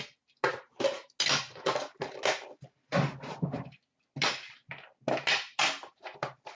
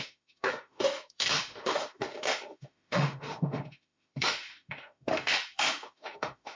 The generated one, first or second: second